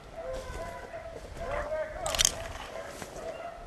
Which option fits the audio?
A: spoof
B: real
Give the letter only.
B